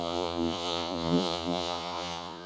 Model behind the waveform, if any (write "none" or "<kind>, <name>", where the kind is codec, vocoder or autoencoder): vocoder, Vocos